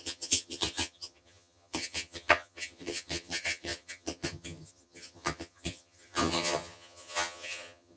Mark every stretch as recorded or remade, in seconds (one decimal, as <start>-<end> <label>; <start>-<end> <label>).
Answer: 0.0-8.0 remade

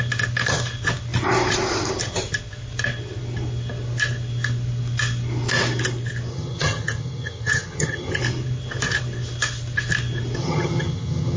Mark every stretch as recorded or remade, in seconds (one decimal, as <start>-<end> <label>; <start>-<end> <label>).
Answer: 0.0-6.3 recorded; 6.3-8.2 remade; 8.2-10.4 recorded; 10.4-11.4 remade

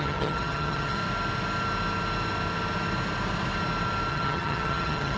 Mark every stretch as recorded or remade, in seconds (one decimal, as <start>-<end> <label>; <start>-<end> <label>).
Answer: 0.0-1.0 remade; 1.0-4.1 recorded; 4.1-5.2 remade

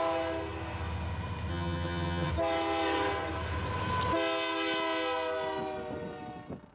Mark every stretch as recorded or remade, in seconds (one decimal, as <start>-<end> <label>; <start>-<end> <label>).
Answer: 0.0-1.5 recorded; 1.5-2.3 remade; 2.3-6.7 recorded

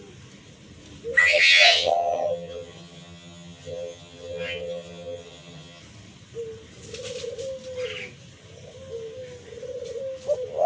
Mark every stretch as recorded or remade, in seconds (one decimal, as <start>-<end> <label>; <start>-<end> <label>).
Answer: 0.0-1.2 recorded; 1.2-5.8 remade; 5.8-10.7 recorded